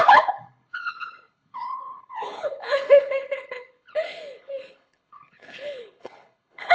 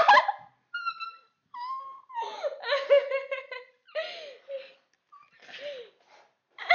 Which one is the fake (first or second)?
first